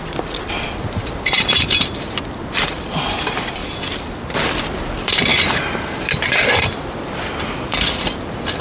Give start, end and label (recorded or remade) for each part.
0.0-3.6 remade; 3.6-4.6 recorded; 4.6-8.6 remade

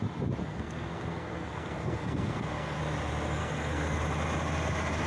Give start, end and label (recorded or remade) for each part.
0.0-0.4 recorded; 0.4-2.8 remade; 2.8-3.4 recorded; 3.4-4.0 remade; 4.0-5.1 recorded

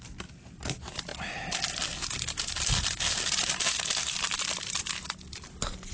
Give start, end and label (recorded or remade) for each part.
0.0-5.9 recorded